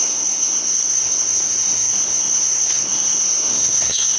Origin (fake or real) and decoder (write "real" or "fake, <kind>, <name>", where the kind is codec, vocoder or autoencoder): fake, codec, SNAC